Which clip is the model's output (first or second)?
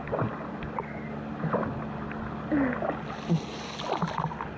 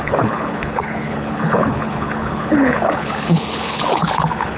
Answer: second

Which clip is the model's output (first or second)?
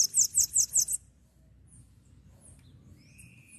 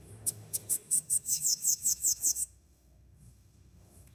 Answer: second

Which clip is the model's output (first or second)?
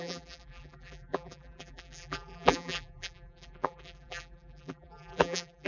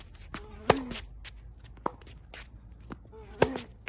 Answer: first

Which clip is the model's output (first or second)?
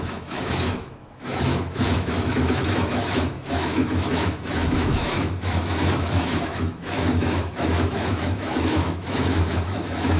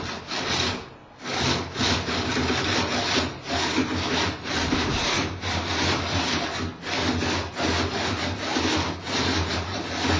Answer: first